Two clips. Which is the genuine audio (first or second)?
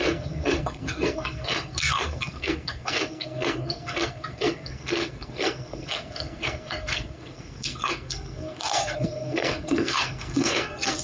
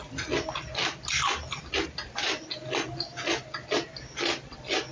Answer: second